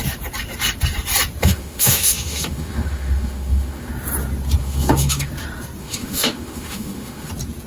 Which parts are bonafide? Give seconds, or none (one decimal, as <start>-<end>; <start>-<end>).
0.0-1.4; 3.9-4.6; 5.3-5.8; 7.3-7.7